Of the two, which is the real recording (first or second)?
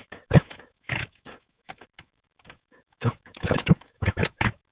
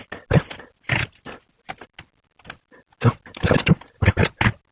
second